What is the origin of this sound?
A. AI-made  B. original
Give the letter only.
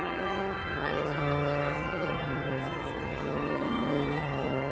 A